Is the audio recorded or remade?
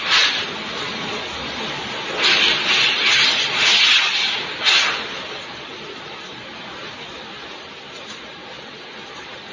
recorded